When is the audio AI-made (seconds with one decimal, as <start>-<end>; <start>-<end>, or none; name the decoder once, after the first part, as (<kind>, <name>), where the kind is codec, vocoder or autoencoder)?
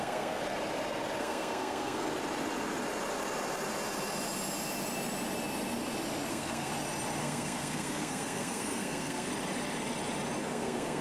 0.0-0.4 (codec, SNAC); 1.2-2.1; 6.3-6.7; 7.2-9.3; 10.4-11.0